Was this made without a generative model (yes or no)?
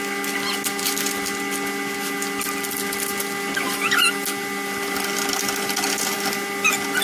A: yes